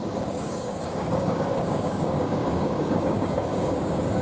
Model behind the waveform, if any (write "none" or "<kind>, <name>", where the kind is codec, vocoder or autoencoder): codec, DAC